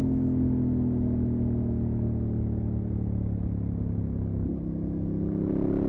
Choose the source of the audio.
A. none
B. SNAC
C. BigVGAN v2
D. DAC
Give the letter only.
A